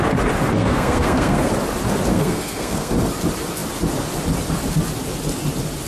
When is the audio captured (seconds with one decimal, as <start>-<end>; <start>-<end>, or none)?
0.0-0.6; 1.5-2.1; 2.9-5.9